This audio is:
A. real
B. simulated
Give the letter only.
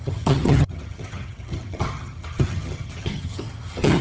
B